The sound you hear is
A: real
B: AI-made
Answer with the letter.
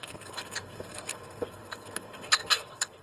B